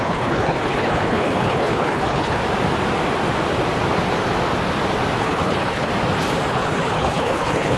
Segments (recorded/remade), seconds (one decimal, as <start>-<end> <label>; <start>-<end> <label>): 0.0-2.4 remade; 2.4-5.2 recorded; 5.2-5.9 remade; 5.9-6.5 recorded; 6.5-7.8 remade